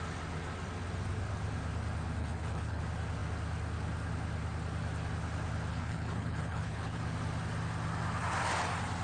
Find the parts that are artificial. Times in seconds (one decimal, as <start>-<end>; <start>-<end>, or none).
2.2-2.8; 5.7-7.0